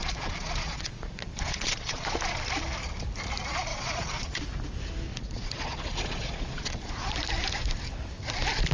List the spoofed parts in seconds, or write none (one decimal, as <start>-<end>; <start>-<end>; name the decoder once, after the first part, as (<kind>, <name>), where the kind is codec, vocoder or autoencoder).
0.0-2.2 (vocoder, Vocos); 3.7-4.4; 5.1-6.9